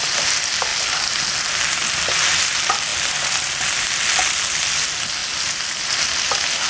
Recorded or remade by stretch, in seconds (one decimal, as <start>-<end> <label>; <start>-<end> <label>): 0.0-6.7 recorded

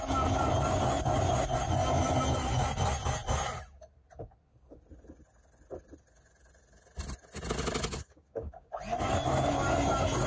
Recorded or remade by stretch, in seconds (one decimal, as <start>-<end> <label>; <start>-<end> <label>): 0.0-8.0 recorded; 8.0-8.7 remade; 8.7-10.3 recorded

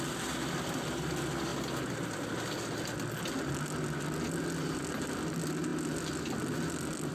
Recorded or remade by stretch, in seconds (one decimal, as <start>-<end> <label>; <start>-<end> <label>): 0.0-7.1 recorded

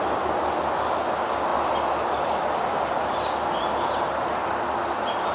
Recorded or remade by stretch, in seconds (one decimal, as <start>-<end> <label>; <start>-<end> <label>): 0.0-5.3 recorded

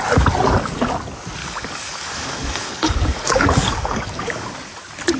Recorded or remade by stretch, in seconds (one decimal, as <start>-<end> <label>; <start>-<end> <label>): 0.0-1.4 recorded; 1.4-4.5 remade; 4.5-5.2 recorded